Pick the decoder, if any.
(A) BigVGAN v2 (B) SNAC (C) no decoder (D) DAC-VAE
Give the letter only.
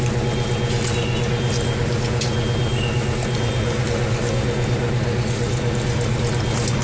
C